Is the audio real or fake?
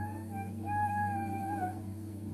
fake